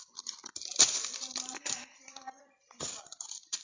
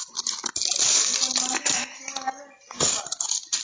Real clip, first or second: second